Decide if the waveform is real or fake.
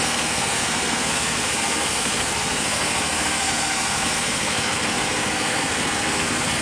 fake